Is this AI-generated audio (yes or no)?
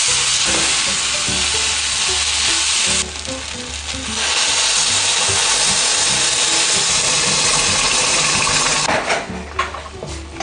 no